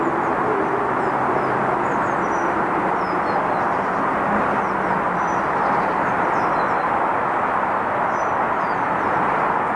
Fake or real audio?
real